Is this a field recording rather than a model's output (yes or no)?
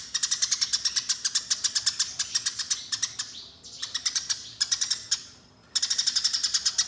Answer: yes